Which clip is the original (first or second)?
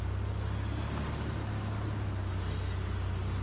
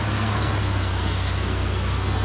first